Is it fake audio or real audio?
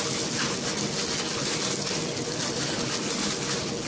real